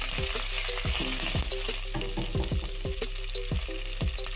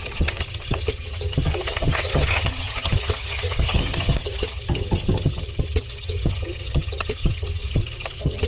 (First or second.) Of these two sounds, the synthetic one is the second